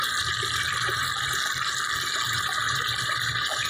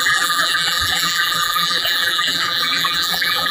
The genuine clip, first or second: first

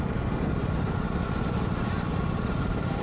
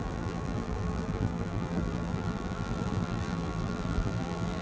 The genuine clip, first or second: first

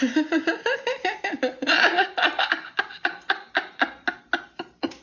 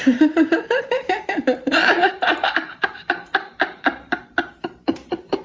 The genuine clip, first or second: first